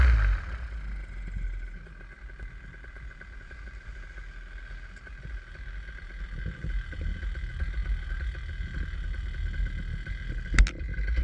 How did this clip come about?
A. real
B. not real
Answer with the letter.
A